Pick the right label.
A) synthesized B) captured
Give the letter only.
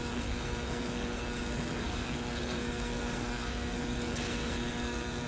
A